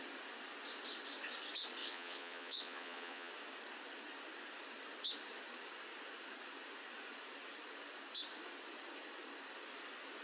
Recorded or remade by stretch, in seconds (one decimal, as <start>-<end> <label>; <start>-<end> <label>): 0.0-1.8 recorded; 1.8-3.3 remade; 3.3-10.2 recorded

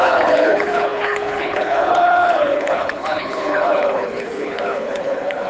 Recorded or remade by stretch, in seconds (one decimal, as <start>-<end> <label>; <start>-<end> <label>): 0.0-5.5 remade

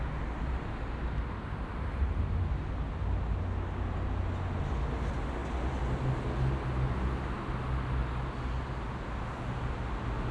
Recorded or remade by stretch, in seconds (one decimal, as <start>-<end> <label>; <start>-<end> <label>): 0.0-10.3 recorded

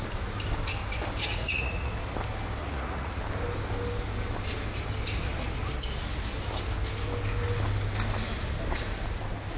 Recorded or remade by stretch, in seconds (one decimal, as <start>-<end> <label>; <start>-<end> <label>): 0.0-1.3 recorded; 1.3-1.9 remade; 1.9-2.6 recorded; 2.6-3.2 remade; 3.2-9.6 recorded

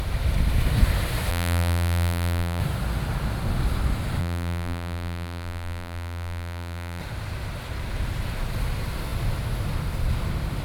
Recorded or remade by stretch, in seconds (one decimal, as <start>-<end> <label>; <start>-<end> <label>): 0.0-1.3 recorded; 1.3-2.6 remade; 2.6-4.2 recorded; 4.2-7.0 remade; 7.0-10.6 recorded

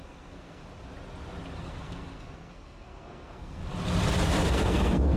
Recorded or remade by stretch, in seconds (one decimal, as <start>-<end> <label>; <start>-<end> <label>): 0.0-0.6 remade; 0.6-1.6 recorded; 1.6-3.6 remade; 3.6-4.4 recorded; 4.4-5.2 remade

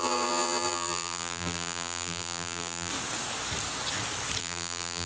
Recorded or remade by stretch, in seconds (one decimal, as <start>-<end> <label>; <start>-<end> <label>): 0.0-2.9 remade; 2.9-4.4 recorded; 4.4-5.1 remade

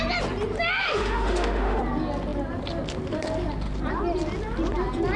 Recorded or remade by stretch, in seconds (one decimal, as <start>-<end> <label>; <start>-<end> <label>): 0.0-0.8 recorded; 0.8-1.8 remade; 1.8-5.2 recorded